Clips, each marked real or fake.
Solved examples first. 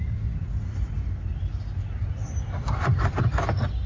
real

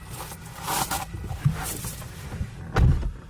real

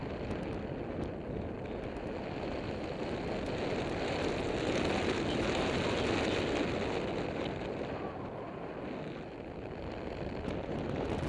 real